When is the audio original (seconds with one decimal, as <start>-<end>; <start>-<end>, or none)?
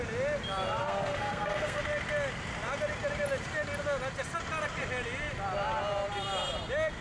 0.0-0.8; 1.8-7.0